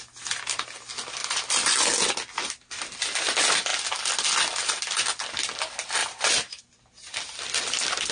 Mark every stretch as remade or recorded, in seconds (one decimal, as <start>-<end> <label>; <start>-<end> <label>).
0.0-6.0 recorded; 6.0-6.6 remade; 6.6-8.1 recorded